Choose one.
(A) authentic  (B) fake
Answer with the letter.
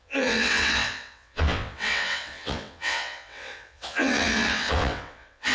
B